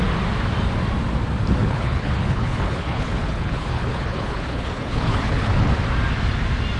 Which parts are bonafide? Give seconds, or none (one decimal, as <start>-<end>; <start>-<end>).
0.0-1.6; 5.7-6.8